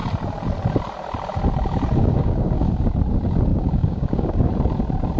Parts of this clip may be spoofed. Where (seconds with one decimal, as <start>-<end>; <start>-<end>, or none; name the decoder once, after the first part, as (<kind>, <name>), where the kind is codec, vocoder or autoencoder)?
2.0-2.7 (codec, DAC); 3.5-4.5